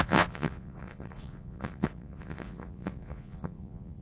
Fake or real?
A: fake